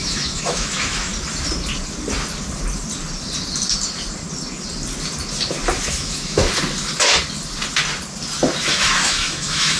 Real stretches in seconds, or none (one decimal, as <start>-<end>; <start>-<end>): 1.1-5.9; 6.4-8.6